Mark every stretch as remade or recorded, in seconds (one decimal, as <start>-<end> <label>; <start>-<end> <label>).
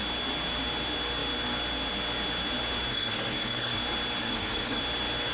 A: 0.0-2.9 recorded; 2.9-3.8 remade; 3.8-4.2 recorded; 4.2-4.8 remade; 4.8-5.3 recorded